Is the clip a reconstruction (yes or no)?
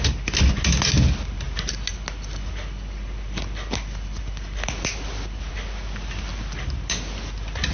no